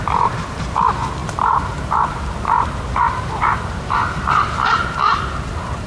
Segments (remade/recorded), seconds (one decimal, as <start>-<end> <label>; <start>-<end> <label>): 0.0-5.9 remade